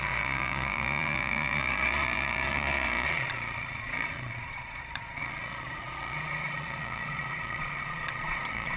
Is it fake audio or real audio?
fake